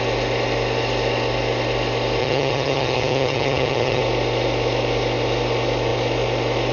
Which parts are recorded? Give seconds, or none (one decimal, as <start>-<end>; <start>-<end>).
0.0-2.2; 4.0-6.7